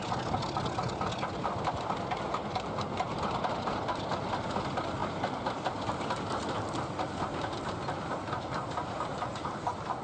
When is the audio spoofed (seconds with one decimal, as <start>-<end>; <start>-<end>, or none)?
none